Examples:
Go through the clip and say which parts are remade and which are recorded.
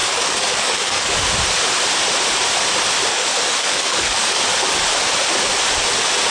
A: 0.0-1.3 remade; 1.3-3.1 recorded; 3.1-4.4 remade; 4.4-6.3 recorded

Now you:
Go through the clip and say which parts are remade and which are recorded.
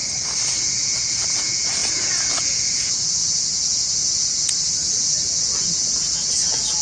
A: 0.0-0.6 recorded; 0.6-6.8 remade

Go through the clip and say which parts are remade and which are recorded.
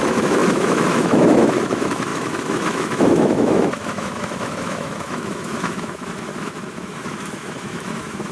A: 0.0-8.3 remade